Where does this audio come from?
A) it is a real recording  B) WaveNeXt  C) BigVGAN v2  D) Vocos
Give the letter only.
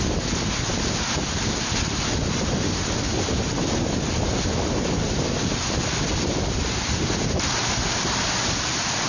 A